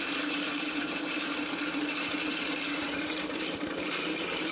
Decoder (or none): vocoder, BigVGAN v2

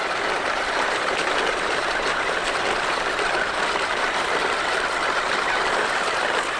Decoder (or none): vocoder, BigVGAN v2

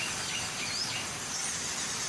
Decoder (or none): none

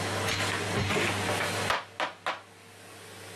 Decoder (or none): none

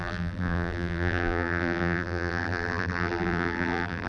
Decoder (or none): vocoder, BigVGAN v2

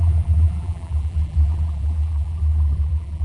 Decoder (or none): vocoder, BigVGAN v2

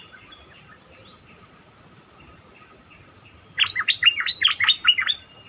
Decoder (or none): vocoder, BigVGAN v2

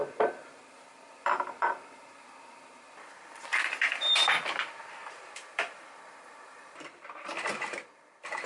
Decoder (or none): vocoder, BigVGAN v2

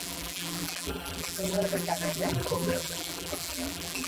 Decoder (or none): vocoder, BigVGAN v2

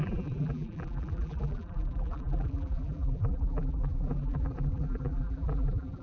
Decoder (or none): vocoder, BigVGAN v2